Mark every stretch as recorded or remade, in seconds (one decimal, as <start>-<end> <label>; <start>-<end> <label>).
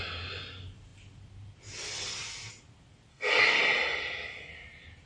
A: 0.0-3.1 recorded; 3.1-3.6 remade; 3.6-5.1 recorded